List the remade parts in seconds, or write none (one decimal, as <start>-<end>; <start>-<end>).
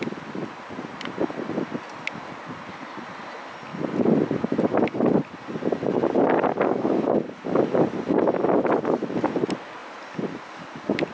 none